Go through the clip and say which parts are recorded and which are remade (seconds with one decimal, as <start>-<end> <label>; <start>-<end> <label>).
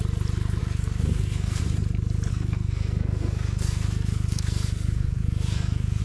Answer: 0.0-0.6 recorded; 0.6-1.6 remade; 1.6-2.3 recorded; 2.3-6.0 remade